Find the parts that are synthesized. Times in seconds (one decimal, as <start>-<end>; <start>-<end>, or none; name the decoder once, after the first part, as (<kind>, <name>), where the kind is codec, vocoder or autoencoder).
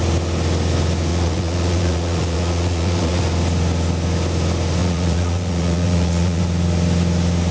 1.1-3.2 (vocoder, Vocos); 4.8-6.4